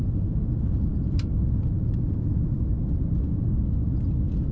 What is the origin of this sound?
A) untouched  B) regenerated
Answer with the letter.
A